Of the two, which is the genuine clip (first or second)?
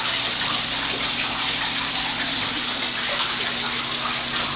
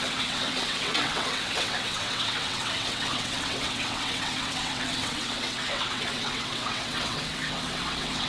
first